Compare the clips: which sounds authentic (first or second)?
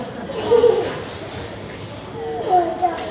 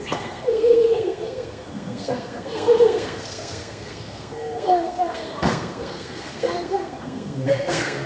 first